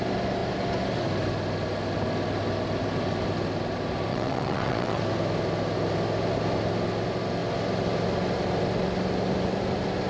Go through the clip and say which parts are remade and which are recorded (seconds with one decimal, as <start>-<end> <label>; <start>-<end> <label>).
0.0-4.1 recorded; 4.1-5.0 remade; 5.0-10.1 recorded